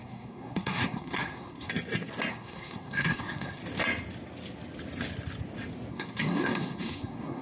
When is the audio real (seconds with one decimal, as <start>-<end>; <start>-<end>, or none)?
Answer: 1.7-2.3; 3.6-5.9